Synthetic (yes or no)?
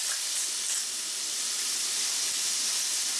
no